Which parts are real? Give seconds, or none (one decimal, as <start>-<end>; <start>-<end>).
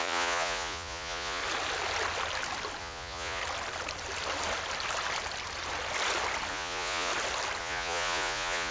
1.4-2.8; 3.4-6.5; 7.1-7.6